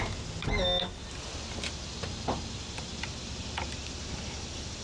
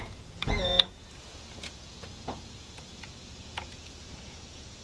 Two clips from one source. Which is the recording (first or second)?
first